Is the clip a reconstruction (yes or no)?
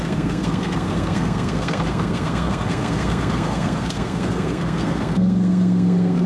yes